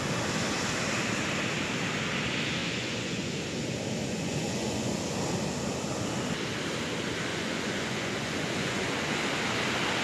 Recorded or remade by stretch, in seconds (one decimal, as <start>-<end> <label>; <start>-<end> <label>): 0.0-2.6 recorded; 2.6-3.3 remade; 3.3-4.0 recorded; 4.0-5.0 remade; 5.0-7.3 recorded; 7.3-9.2 remade; 9.2-10.0 recorded